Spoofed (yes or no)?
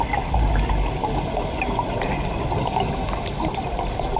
no